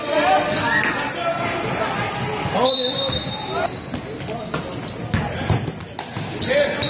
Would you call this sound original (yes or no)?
yes